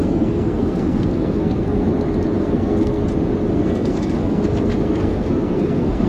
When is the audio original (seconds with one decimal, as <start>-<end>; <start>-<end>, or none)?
1.9-2.4; 3.0-3.5